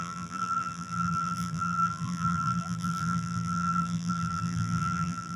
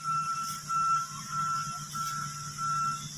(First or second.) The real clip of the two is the second